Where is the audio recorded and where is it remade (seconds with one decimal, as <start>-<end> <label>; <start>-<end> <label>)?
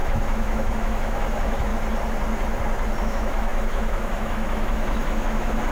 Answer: 0.0-1.7 remade; 1.7-3.0 recorded; 3.0-5.7 remade